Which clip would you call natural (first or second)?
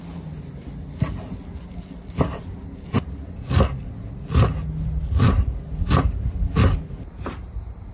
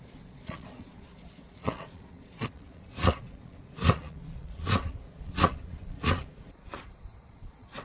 first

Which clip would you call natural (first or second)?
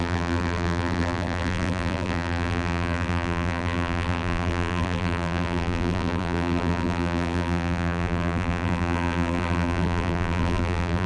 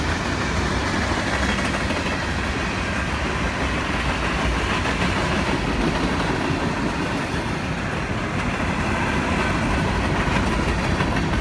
second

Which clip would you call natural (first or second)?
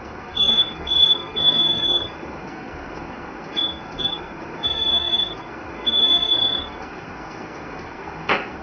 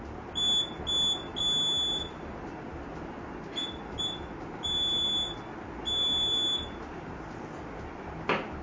second